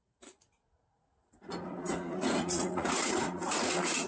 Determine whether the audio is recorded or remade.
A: remade